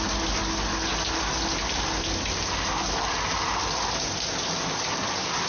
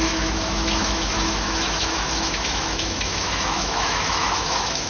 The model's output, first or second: second